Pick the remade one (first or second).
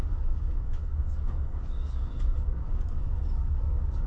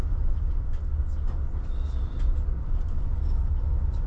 first